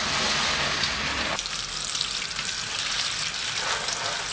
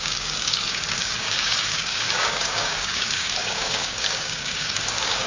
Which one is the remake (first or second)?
second